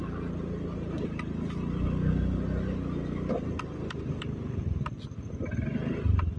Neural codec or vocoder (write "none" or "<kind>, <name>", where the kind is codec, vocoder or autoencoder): none